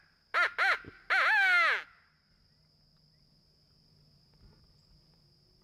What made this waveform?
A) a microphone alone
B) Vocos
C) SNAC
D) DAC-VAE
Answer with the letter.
A